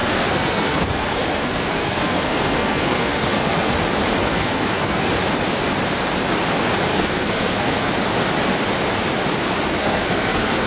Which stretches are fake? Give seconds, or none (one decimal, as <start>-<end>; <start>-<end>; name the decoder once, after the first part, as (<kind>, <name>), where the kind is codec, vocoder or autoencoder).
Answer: 0.0-3.7 (codec, SNAC); 4.2-5.1; 6.9-7.9; 9.8-10.7